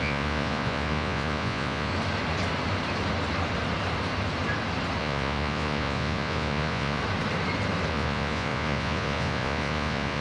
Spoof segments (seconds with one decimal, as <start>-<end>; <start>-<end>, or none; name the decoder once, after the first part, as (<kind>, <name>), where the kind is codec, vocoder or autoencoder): 0.0-1.9 (vocoder, Vocos); 5.0-7.0; 7.9-10.2